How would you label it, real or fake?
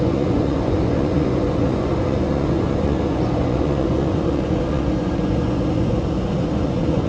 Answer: fake